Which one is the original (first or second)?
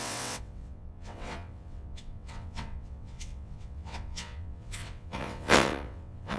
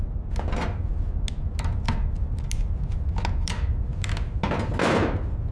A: second